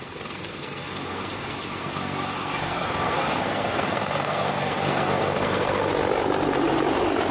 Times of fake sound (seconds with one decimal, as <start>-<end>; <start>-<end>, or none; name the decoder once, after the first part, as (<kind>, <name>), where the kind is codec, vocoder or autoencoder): 0.0-5.9 (codec, SNAC)